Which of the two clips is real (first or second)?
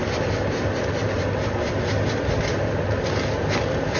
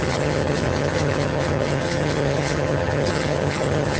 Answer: first